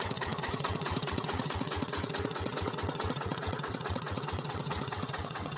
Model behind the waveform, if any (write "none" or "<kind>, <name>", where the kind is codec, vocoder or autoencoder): vocoder, WaveNeXt